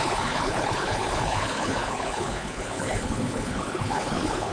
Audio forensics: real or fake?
fake